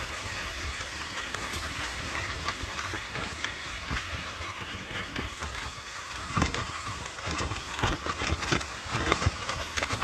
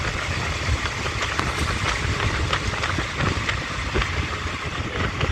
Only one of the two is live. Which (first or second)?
second